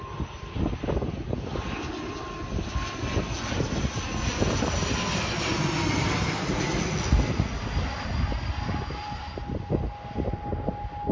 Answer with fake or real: real